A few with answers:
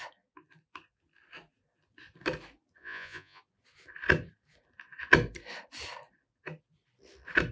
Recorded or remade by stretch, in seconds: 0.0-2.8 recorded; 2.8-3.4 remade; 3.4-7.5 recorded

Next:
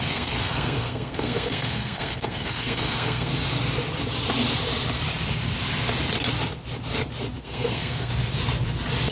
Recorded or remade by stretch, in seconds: 0.0-3.3 remade; 3.3-7.4 recorded; 7.4-8.1 remade; 8.1-9.1 recorded

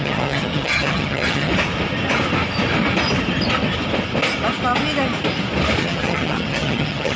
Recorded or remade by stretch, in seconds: 0.0-1.5 remade; 1.5-5.8 recorded; 5.8-7.2 remade

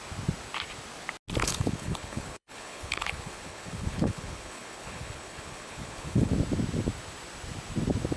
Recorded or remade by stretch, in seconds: 0.0-1.4 recorded; 1.4-6.3 remade; 6.3-8.2 recorded

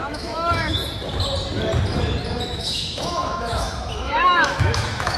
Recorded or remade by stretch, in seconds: 0.0-0.8 remade; 0.8-2.4 recorded; 2.4-5.2 remade

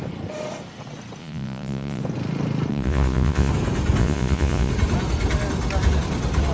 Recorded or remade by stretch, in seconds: 0.0-1.2 recorded; 1.2-2.0 remade; 2.0-2.7 recorded; 2.7-3.5 remade; 3.5-4.0 recorded; 4.0-4.7 remade; 4.7-6.5 recorded